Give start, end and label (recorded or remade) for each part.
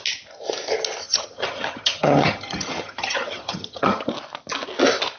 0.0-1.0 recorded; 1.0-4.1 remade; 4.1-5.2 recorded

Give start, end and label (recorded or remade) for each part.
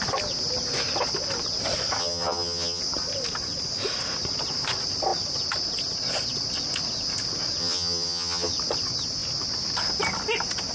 0.0-2.0 recorded; 2.0-2.8 remade; 2.8-7.6 recorded; 7.6-8.5 remade; 8.5-10.7 recorded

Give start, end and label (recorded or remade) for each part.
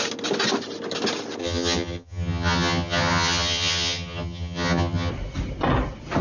0.0-1.4 recorded; 1.4-5.1 remade; 5.1-6.2 recorded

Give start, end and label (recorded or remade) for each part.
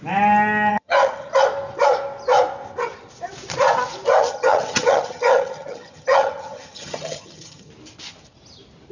0.0-0.7 recorded; 0.7-1.3 remade; 1.3-4.2 recorded; 4.2-7.7 remade; 7.7-8.9 recorded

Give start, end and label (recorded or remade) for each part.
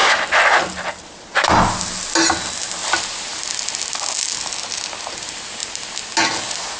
0.0-6.8 recorded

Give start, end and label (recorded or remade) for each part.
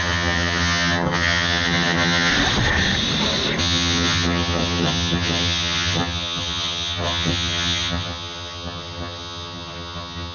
0.0-2.3 remade; 2.3-3.6 recorded; 3.6-10.3 remade